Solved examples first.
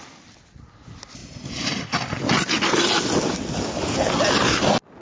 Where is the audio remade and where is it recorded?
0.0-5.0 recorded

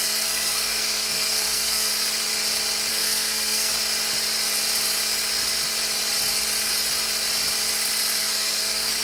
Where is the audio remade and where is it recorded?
0.0-1.9 remade; 1.9-2.9 recorded; 2.9-3.7 remade; 3.7-8.2 recorded; 8.2-9.0 remade

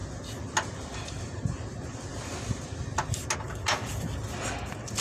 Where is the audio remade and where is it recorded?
0.0-5.0 recorded

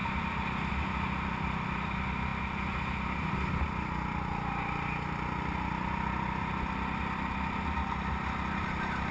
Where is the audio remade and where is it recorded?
0.0-9.1 recorded

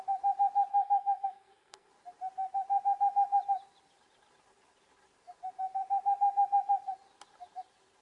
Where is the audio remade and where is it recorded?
0.0-0.7 recorded; 0.7-1.9 remade; 1.9-8.0 recorded

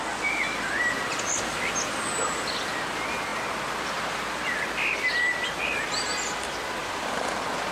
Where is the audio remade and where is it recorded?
0.0-6.8 recorded; 6.8-7.3 remade; 7.3-7.7 recorded

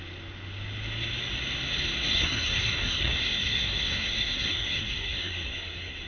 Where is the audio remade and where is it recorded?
0.0-2.1 recorded; 2.1-6.1 remade

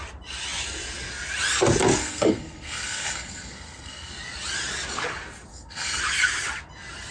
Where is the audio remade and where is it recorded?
0.0-2.0 recorded; 2.0-4.1 remade; 4.1-5.5 recorded; 5.5-6.0 remade; 6.0-7.1 recorded